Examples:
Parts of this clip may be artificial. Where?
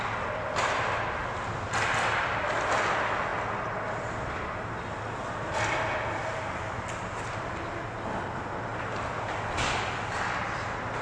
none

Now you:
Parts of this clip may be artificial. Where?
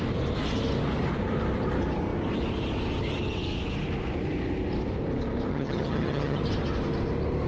5.5-6.4 (vocoder, HiFi-GAN)